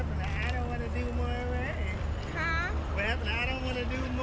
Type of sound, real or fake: real